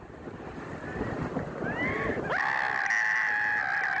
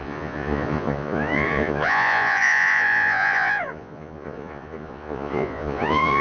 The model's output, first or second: second